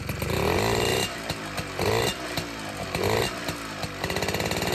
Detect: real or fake real